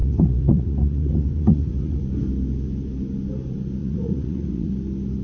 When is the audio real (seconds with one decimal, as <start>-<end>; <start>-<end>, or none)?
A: 2.0-3.8; 4.7-5.2